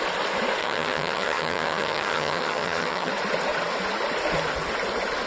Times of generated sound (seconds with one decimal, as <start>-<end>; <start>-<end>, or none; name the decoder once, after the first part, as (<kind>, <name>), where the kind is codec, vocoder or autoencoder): 0.6-3.1 (vocoder, HiFi-GAN)